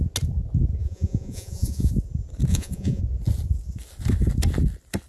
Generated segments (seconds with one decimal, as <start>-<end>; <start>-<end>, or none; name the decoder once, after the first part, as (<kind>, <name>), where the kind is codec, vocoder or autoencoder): 0.8-1.9 (vocoder, Vocos); 2.5-3.0